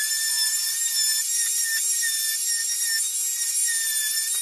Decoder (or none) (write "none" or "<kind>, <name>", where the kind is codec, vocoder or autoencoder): none